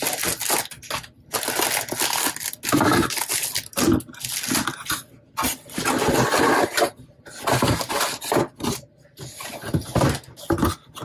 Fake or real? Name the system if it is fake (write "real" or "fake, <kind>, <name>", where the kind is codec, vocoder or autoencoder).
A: real